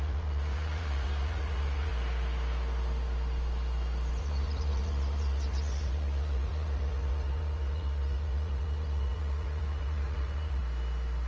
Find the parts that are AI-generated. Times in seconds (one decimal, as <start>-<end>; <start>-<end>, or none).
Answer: 0.0-1.9; 4.2-10.6